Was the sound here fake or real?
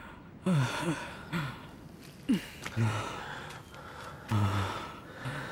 real